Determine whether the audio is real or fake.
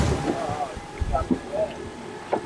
real